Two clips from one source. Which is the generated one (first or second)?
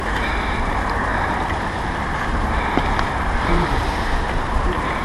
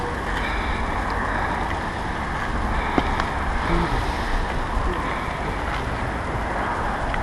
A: first